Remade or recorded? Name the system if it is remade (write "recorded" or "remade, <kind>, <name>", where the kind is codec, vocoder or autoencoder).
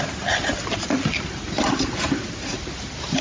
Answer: recorded